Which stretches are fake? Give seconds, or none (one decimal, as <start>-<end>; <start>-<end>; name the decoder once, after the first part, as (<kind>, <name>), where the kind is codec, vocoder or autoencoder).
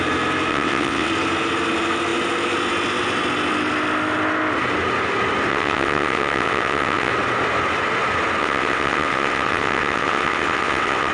0.5-1.1 (vocoder, WaveNeXt); 5.5-7.1; 8.4-11.1